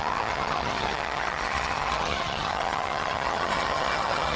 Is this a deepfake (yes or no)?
yes